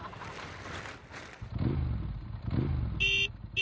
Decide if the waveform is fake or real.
real